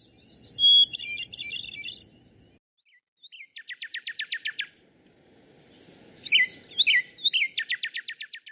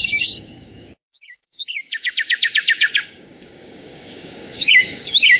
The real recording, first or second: first